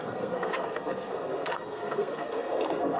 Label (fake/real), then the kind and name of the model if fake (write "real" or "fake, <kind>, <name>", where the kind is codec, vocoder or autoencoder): fake, codec, SNAC